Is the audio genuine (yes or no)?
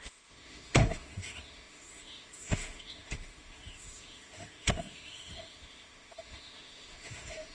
no